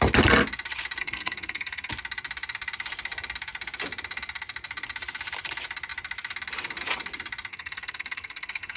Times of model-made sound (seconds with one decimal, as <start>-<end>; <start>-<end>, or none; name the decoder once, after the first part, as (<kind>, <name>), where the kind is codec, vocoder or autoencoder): 1.0-1.9 (codec, SNAC); 7.5-8.8